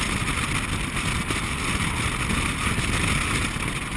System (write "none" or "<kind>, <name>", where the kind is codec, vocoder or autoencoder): none